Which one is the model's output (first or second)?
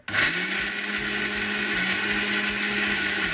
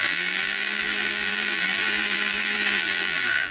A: second